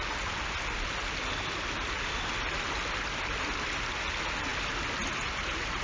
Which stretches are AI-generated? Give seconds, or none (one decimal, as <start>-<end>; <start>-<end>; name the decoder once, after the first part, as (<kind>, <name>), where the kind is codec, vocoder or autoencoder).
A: none